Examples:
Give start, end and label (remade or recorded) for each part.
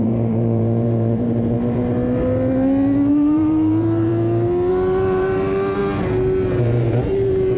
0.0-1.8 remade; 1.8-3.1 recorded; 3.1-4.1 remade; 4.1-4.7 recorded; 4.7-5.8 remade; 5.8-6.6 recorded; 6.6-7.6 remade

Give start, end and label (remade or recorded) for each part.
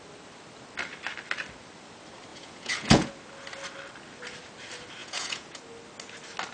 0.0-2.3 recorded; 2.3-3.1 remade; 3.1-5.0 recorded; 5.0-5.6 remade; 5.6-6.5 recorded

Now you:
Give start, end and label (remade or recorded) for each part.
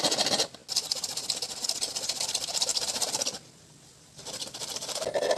0.0-0.6 remade; 0.6-1.6 recorded; 1.6-5.4 remade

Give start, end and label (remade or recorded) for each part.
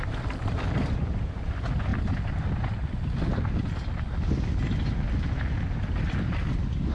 0.0-1.9 remade; 1.9-6.0 recorded; 6.0-6.9 remade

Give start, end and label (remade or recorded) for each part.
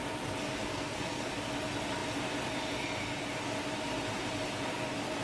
0.0-0.6 recorded; 0.6-1.3 remade; 1.3-5.2 recorded